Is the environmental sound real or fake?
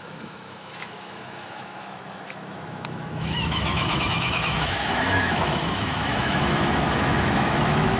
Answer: fake